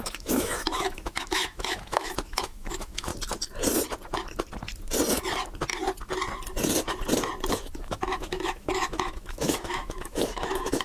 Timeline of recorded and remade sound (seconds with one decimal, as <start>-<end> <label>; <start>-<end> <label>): 0.0-3.1 remade; 3.1-7.5 recorded; 7.5-10.8 remade